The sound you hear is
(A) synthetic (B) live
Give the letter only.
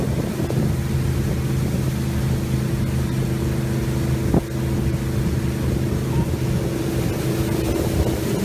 B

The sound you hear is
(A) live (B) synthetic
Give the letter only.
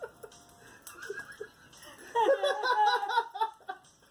A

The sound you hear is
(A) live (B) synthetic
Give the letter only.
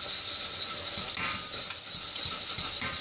A